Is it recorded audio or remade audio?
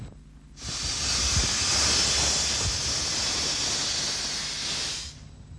recorded